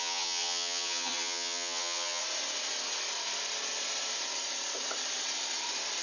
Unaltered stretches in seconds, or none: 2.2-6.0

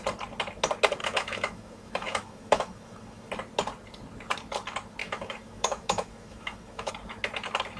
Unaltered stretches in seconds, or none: 0.0-1.0; 3.3-5.0; 6.9-7.8

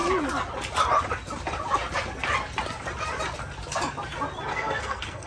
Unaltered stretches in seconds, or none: 0.0-4.5

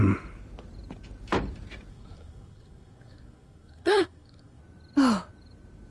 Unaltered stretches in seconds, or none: 0.0-1.9; 4.6-5.9